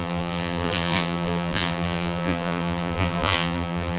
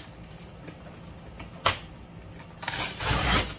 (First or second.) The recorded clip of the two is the second